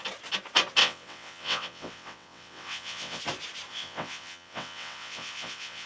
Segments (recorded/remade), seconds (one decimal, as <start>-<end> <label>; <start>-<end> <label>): 0.0-0.8 recorded; 0.8-3.2 remade; 3.2-3.7 recorded; 3.7-5.9 remade